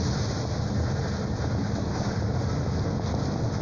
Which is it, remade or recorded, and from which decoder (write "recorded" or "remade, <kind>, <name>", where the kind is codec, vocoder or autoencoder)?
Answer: recorded